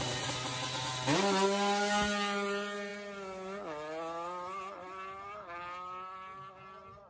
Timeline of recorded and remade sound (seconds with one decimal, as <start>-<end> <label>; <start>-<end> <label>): 0.0-7.1 recorded